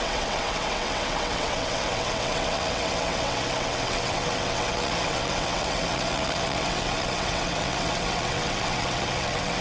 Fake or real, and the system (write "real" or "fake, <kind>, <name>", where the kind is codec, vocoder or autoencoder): fake, vocoder, WaveNeXt